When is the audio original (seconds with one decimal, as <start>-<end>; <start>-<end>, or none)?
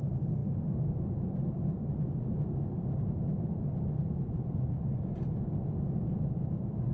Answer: none